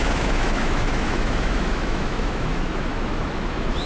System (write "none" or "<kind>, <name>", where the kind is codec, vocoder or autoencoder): autoencoder, DAC-VAE